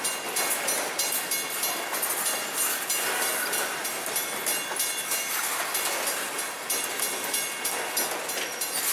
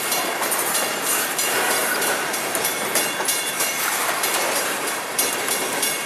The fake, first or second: second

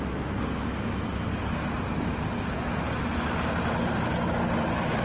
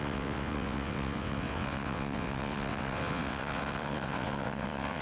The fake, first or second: second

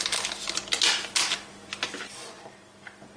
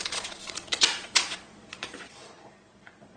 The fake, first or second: second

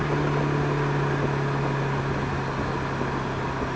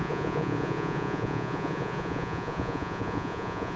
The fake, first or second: second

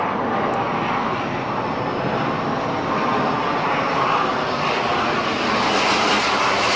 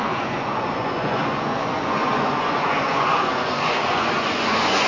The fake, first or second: second